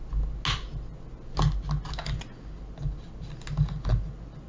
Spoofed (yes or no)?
no